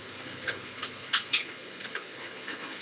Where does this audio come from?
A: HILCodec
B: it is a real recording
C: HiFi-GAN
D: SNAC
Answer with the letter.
A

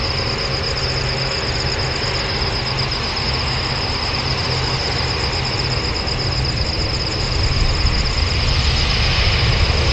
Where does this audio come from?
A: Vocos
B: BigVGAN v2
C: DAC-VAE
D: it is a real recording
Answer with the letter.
D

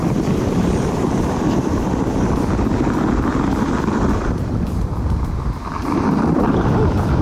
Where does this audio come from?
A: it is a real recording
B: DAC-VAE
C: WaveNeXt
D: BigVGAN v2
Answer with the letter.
D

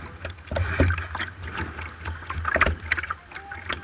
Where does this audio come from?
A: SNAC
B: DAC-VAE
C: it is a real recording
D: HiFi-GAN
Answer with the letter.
C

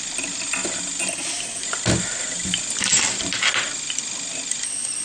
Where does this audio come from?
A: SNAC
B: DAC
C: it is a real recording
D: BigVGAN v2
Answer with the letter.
C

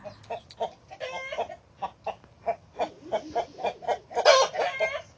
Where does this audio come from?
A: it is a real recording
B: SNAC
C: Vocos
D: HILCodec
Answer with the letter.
A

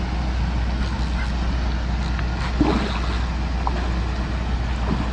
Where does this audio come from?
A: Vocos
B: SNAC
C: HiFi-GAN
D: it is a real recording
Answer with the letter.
D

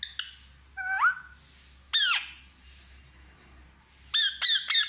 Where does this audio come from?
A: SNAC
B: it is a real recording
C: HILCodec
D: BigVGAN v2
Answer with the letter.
B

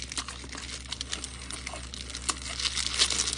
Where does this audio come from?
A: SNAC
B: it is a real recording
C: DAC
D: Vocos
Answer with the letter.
B